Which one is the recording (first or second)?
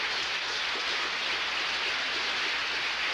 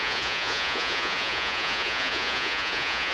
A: first